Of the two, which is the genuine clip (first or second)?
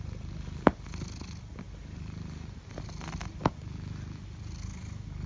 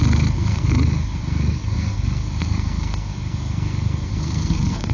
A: first